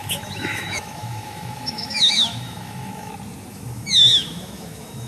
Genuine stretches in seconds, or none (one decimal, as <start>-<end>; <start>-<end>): 3.1-3.5